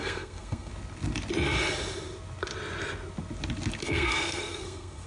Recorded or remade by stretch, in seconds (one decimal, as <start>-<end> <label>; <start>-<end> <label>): 0.0-0.7 remade; 0.7-3.8 recorded; 3.8-5.1 remade